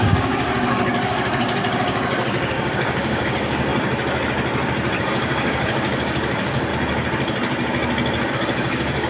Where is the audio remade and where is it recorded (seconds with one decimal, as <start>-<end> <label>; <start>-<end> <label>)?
0.0-3.7 remade; 3.7-5.0 recorded; 5.0-6.7 remade; 6.7-8.3 recorded; 8.3-9.1 remade